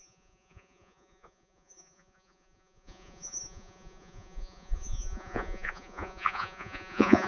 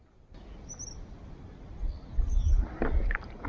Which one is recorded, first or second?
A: second